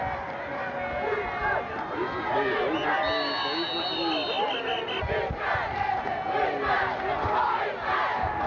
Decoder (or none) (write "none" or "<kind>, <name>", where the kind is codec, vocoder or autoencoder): none